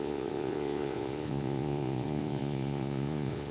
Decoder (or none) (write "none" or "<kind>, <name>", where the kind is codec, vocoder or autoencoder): vocoder, Vocos